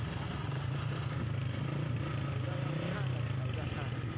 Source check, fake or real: real